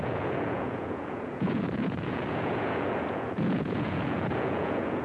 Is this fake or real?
fake